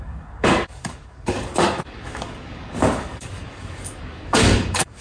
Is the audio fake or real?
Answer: fake